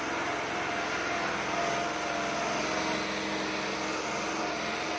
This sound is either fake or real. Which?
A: real